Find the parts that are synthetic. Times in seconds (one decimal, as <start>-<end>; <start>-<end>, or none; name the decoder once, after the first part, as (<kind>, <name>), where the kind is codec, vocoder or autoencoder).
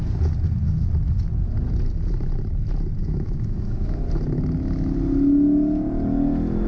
3.0-4.0 (autoencoder, DAC-VAE)